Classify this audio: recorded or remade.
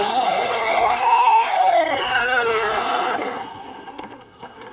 remade